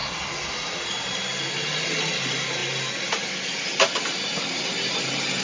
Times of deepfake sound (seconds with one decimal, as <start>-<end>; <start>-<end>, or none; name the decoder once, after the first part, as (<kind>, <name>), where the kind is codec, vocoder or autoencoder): none